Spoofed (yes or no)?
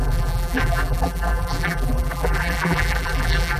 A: yes